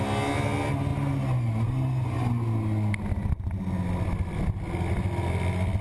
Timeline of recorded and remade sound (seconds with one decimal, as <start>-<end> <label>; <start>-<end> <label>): 0.0-5.8 recorded